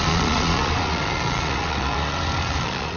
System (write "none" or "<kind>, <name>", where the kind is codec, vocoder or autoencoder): vocoder, Vocos